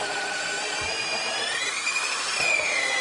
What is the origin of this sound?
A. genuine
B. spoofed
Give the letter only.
A